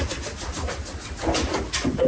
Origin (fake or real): real